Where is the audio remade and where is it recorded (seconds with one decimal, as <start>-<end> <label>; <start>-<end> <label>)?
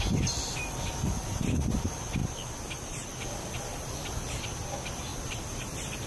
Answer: 0.0-5.1 recorded; 5.1-6.1 remade